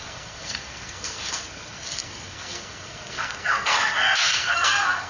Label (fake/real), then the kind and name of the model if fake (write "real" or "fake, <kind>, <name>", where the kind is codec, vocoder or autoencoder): fake, codec, SNAC